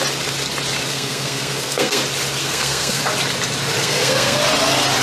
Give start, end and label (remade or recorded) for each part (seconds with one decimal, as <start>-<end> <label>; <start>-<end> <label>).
0.0-0.9 recorded; 0.9-2.0 remade; 2.0-2.4 recorded; 2.4-3.0 remade; 3.0-3.8 recorded; 3.8-4.4 remade; 4.4-5.0 recorded